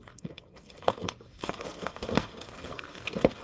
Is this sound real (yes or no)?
no